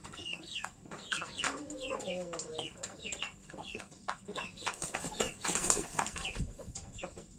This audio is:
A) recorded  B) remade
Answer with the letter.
B